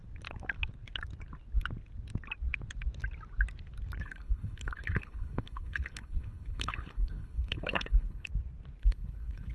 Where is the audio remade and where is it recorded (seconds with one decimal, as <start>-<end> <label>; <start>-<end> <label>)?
0.0-4.0 recorded; 4.0-8.3 remade; 8.3-8.8 recorded; 8.8-9.5 remade